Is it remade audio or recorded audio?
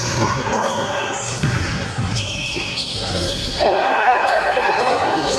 remade